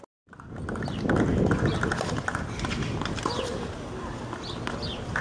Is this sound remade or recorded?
recorded